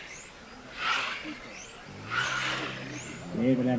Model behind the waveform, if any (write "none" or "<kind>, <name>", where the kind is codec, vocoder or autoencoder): none